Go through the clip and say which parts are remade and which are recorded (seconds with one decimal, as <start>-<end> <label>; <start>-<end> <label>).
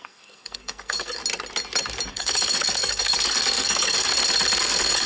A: 0.0-1.2 remade; 1.2-2.1 recorded; 2.1-4.1 remade; 4.1-4.6 recorded; 4.6-5.1 remade